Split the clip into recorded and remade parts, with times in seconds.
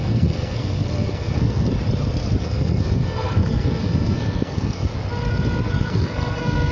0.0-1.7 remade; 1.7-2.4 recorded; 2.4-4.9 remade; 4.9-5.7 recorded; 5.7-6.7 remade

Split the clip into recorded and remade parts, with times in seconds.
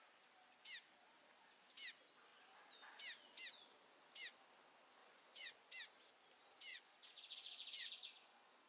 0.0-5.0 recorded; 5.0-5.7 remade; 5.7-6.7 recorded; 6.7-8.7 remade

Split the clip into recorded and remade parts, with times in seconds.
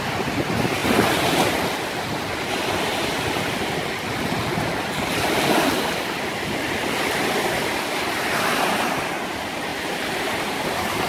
0.0-9.7 recorded; 9.7-10.3 remade; 10.3-11.1 recorded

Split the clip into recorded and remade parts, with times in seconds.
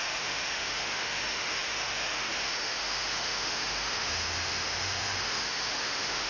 0.0-6.3 remade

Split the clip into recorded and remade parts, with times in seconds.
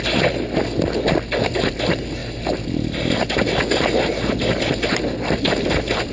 0.0-6.1 recorded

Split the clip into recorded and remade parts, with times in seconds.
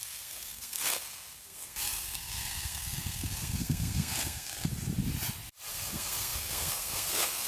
0.0-4.7 remade; 4.7-5.7 recorded; 5.7-7.5 remade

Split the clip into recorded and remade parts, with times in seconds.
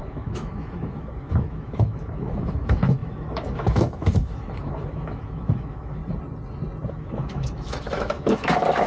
0.0-6.0 remade; 6.0-6.9 recorded; 6.9-8.9 remade